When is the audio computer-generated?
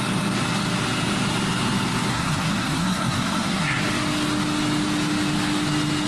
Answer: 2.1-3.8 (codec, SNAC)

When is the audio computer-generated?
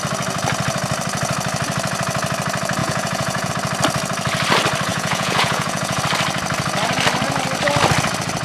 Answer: 2.8-3.5 (vocoder, Vocos); 4.9-6.0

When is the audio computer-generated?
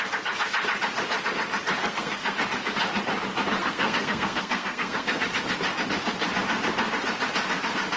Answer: 1.8-2.3 (codec, SNAC); 3.6-5.2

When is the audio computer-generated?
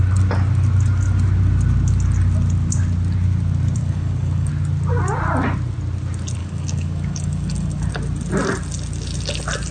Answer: 3.8-4.5 (codec, DAC); 6.4-7.9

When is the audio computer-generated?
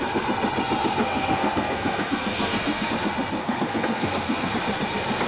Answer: 1.1-2.9 (codec, SNAC); 3.4-4.5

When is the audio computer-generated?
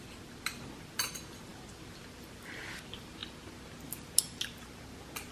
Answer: none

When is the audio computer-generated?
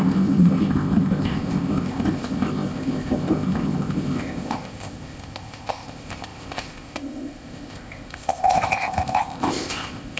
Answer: 0.0-10.2 (codec, ZipCodec)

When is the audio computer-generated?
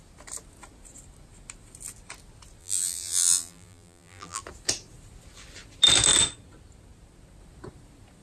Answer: 2.6-4.4 (vocoder, BigVGAN v2)